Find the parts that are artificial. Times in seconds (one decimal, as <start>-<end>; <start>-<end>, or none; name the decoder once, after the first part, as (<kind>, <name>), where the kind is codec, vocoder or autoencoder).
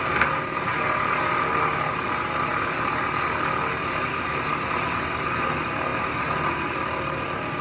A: none